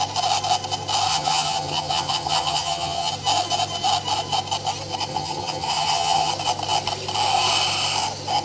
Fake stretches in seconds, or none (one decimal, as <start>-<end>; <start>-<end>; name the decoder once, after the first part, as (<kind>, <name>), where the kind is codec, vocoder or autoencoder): 1.1-3.1 (vocoder, HiFi-GAN); 5.1-6.3